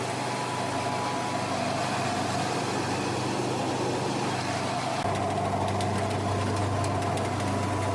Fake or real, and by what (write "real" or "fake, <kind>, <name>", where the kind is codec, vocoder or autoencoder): real